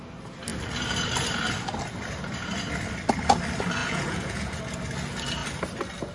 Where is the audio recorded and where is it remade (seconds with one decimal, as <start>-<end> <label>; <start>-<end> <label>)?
0.0-3.8 recorded; 3.8-4.6 remade; 4.6-6.1 recorded